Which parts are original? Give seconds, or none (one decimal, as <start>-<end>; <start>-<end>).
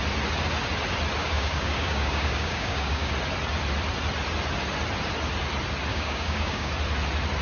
0.0-1.2; 3.1-5.9; 6.7-7.4